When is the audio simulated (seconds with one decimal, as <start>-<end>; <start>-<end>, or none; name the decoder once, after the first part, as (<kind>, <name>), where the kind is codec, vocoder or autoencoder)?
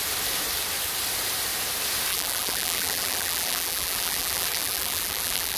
2.1-5.6 (vocoder, BigVGAN v2)